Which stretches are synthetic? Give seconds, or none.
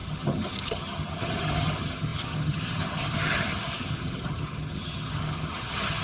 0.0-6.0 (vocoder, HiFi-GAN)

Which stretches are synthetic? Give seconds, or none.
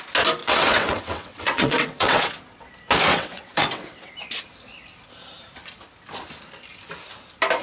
0.4-2.3 (vocoder, WaveNeXt); 3.1-4.1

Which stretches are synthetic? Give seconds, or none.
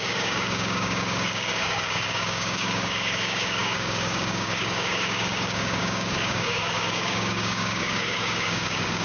0.0-9.0 (codec, DAC)